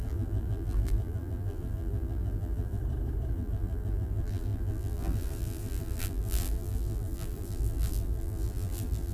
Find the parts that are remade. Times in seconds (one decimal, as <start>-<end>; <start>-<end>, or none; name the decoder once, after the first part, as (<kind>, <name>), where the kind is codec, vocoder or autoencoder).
0.0-2.8 (vocoder, BigVGAN v2); 3.3-9.1